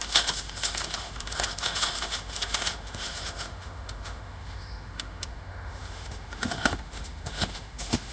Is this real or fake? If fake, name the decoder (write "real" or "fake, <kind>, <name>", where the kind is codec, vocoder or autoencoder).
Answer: fake, autoencoder, DAC-VAE